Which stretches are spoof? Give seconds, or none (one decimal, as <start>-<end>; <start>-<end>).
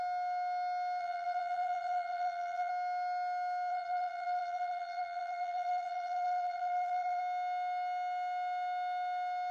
1.0-2.7; 3.7-7.2